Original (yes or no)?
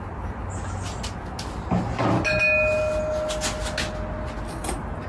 yes